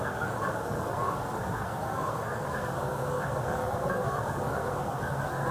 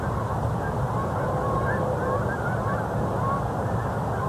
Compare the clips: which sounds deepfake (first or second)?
first